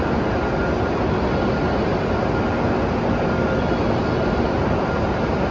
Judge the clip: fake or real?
real